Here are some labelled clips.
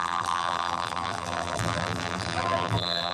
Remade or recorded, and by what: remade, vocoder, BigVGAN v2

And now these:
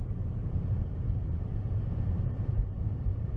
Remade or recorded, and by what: remade, vocoder, BigVGAN v2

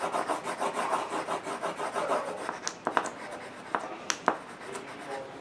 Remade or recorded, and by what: recorded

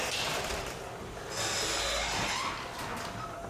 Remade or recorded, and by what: recorded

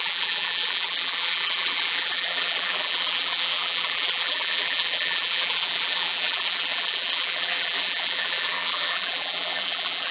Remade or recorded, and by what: remade, vocoder, BigVGAN v2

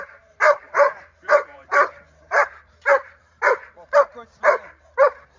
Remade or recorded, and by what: remade, vocoder, BigVGAN v2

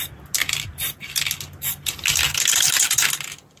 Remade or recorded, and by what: recorded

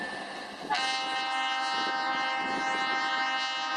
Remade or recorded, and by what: recorded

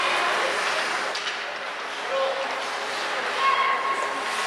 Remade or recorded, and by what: recorded